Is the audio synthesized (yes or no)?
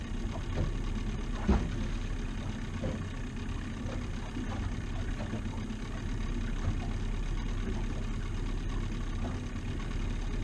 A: no